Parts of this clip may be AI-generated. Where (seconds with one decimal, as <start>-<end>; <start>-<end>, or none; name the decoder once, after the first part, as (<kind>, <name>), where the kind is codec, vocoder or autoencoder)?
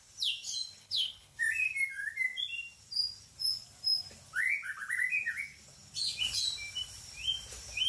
0.8-1.4 (codec, HILCodec)